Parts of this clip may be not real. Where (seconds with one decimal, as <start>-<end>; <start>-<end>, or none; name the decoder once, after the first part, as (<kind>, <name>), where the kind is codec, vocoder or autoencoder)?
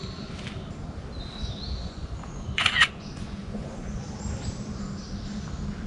1.8-4.0 (vocoder, Vocos)